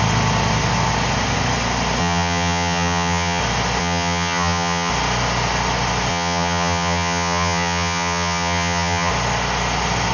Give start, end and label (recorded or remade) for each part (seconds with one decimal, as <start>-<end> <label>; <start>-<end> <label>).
0.0-2.0 recorded; 2.0-3.4 remade; 3.4-3.8 recorded; 3.8-4.9 remade; 4.9-6.1 recorded; 6.1-9.1 remade; 9.1-10.1 recorded